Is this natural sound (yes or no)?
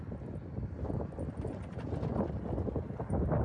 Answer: yes